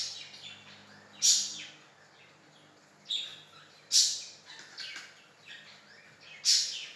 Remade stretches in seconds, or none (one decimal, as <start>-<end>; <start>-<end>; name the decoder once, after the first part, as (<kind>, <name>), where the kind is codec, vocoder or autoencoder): none